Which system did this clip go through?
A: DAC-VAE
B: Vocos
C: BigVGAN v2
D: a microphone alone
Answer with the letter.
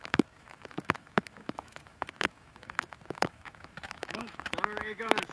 A